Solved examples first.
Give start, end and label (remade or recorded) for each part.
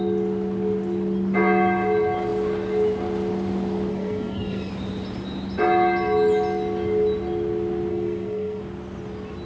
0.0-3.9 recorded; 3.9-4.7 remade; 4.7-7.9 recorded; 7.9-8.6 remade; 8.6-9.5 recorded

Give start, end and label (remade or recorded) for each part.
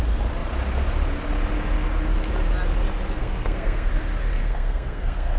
0.0-3.2 recorded; 3.2-3.9 remade; 3.9-4.4 recorded; 4.4-5.4 remade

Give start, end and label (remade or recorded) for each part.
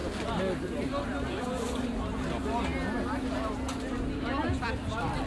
0.0-5.3 recorded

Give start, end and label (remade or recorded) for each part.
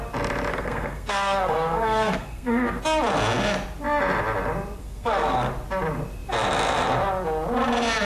0.0-0.5 recorded; 0.5-2.8 remade; 2.8-4.8 recorded; 4.8-5.5 remade; 5.5-8.0 recorded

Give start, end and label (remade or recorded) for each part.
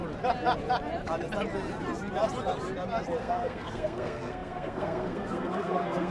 0.0-3.2 recorded; 3.2-6.1 remade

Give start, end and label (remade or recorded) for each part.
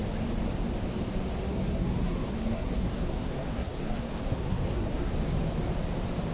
0.0-1.5 recorded; 1.5-5.1 remade; 5.1-6.3 recorded